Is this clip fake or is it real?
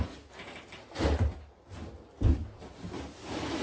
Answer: real